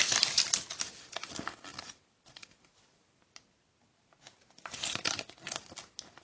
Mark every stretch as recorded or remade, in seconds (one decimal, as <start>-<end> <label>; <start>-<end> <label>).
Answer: 0.0-6.2 recorded